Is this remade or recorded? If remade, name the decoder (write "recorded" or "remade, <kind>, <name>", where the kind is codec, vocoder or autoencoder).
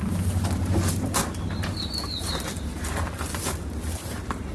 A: recorded